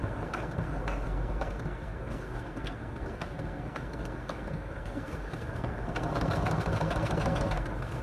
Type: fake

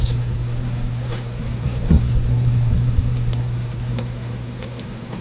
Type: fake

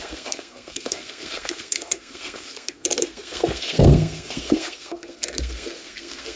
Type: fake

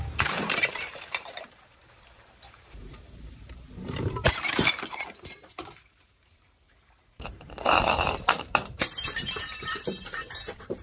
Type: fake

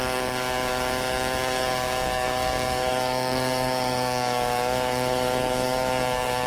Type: fake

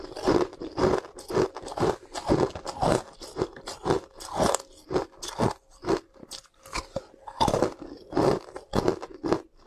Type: real